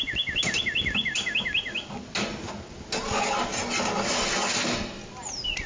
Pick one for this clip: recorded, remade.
recorded